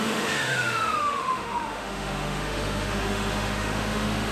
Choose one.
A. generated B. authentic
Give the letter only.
A